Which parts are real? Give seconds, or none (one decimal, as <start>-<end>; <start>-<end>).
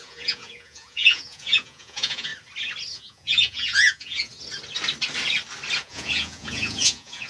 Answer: 2.3-2.9; 4.3-5.8